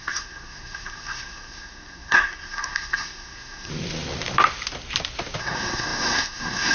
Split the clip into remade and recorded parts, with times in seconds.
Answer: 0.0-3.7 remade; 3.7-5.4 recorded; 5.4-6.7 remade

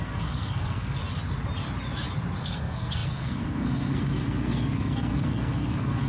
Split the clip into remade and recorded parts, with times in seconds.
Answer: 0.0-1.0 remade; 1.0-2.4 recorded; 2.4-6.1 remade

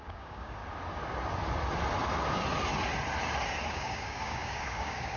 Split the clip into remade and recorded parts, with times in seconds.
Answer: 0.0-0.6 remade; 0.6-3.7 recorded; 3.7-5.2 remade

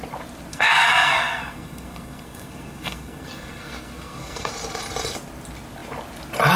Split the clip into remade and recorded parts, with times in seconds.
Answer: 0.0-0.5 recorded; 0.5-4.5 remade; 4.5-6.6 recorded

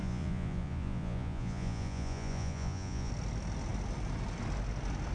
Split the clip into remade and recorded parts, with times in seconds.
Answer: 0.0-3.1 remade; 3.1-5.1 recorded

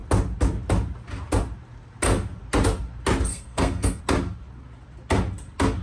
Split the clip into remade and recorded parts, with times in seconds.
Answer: 0.0-3.3 recorded; 3.3-4.0 remade; 4.0-5.8 recorded